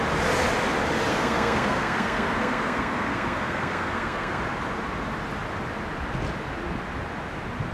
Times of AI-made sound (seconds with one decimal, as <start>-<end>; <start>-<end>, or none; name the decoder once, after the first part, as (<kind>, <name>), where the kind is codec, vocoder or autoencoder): 1.1-4.4 (codec, SNAC)